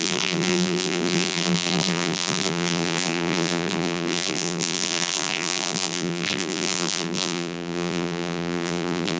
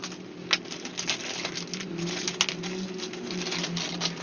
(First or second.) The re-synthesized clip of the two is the first